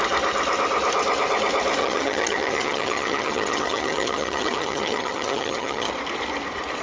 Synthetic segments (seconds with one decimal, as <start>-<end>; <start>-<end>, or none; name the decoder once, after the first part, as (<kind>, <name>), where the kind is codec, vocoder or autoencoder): 1.8-5.9 (vocoder, HiFi-GAN)